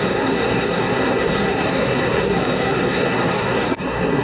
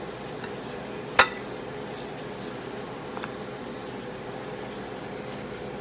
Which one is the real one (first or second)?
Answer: second